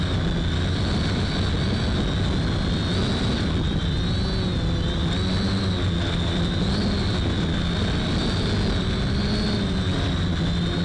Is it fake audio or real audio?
real